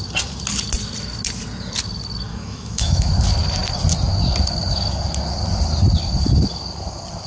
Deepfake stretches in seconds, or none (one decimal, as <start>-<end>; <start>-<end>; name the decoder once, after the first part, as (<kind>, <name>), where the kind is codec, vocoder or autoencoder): 2.3-3.1 (autoencoder, DAC-VAE)